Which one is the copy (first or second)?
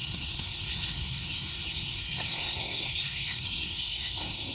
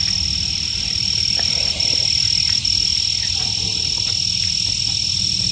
first